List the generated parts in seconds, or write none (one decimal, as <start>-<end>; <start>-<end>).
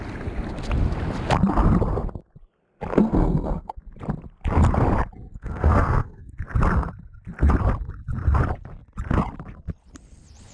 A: 2.9-3.8; 5.3-6.3